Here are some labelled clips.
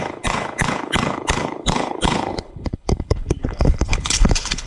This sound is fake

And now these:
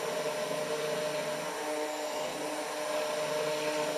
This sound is real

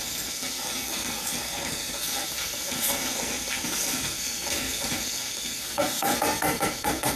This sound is fake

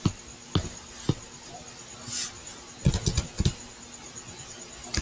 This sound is real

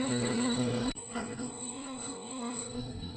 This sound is fake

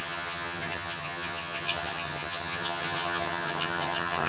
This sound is fake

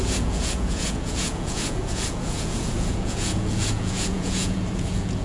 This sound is fake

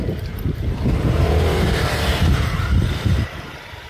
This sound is fake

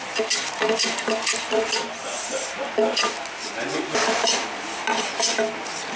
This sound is real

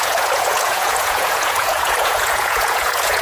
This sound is fake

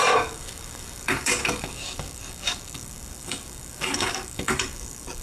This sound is fake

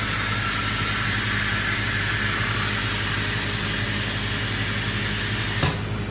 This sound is real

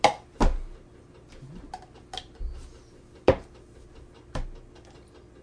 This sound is real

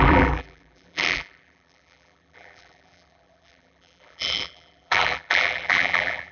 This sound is fake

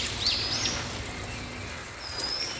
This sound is real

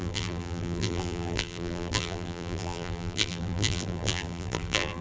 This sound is fake